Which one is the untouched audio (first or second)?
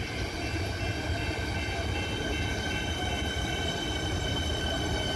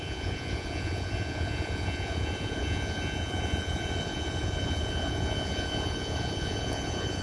first